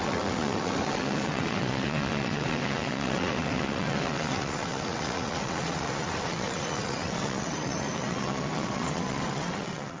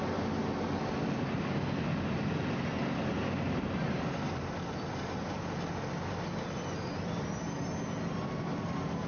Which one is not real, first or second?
first